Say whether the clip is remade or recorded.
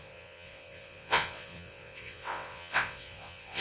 remade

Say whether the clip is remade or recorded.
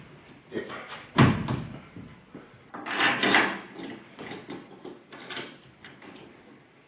recorded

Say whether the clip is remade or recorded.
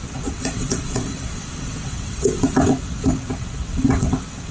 remade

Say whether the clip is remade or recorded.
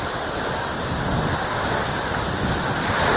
recorded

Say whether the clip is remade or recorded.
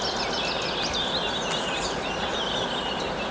recorded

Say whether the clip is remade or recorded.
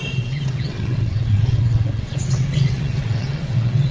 remade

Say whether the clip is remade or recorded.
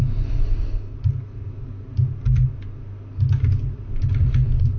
recorded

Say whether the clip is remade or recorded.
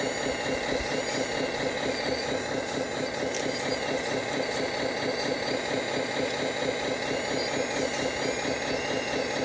recorded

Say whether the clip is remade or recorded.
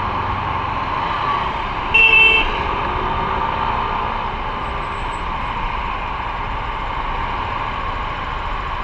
recorded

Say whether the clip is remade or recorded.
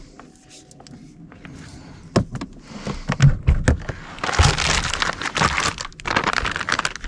recorded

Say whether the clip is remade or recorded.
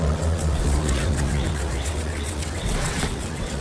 remade